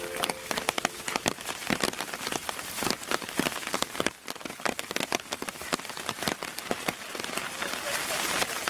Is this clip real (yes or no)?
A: yes